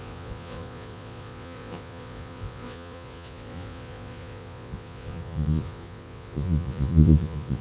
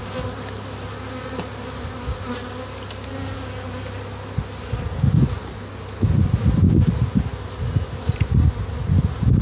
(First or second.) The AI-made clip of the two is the first